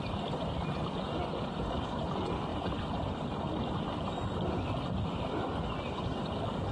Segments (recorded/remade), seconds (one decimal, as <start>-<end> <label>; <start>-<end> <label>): 0.0-6.7 recorded